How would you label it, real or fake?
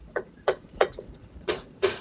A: fake